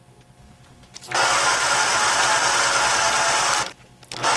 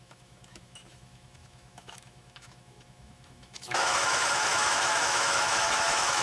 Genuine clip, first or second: first